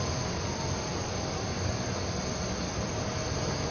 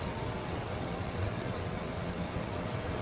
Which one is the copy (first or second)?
second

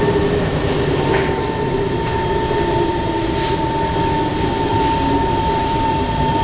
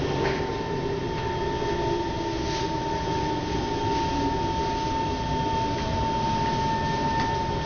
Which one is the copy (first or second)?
first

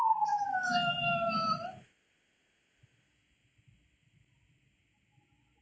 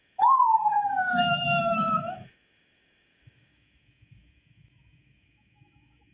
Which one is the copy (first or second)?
second